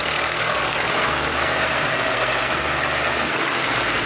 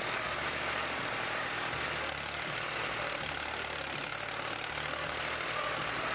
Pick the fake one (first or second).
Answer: first